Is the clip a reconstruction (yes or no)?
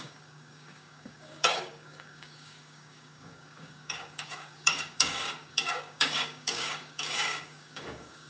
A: yes